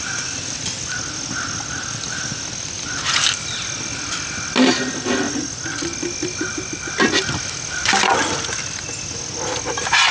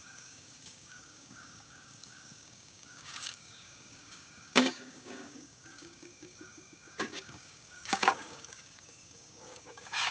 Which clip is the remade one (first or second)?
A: second